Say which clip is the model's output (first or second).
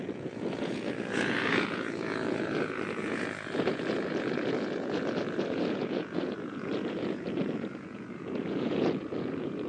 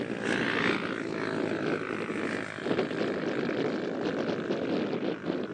first